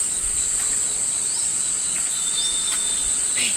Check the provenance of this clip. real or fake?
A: real